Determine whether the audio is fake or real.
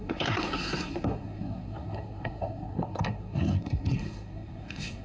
fake